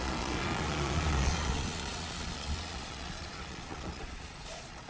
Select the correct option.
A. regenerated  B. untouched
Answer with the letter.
A